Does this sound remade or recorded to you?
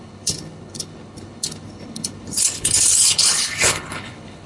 remade